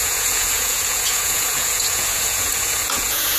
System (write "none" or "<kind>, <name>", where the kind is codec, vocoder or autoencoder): vocoder, Vocos